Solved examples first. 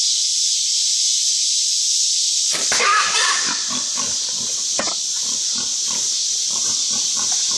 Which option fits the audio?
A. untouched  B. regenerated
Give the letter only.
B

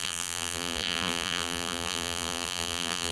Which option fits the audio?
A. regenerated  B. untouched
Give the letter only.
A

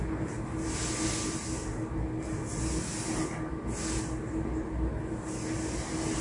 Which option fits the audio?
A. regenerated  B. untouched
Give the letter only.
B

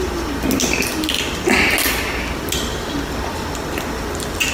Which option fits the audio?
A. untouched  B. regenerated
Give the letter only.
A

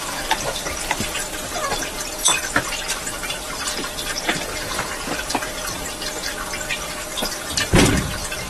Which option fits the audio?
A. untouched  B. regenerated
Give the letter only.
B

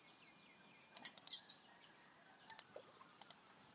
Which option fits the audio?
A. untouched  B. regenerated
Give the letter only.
B